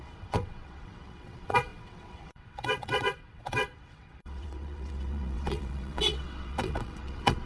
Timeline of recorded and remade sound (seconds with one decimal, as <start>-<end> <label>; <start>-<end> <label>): 0.0-7.5 remade